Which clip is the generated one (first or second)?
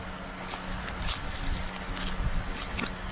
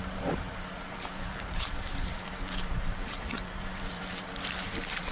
second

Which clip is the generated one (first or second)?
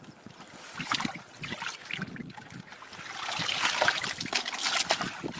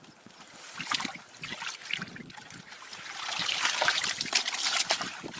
second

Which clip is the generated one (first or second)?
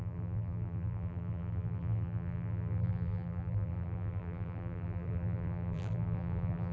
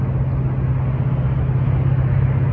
first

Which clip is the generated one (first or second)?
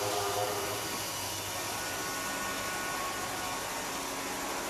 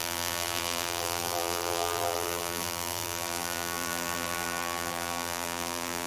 second